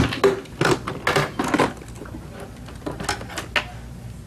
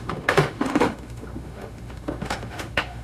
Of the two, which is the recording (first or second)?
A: first